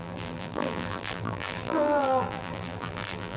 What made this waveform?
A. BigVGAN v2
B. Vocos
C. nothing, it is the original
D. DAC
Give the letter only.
A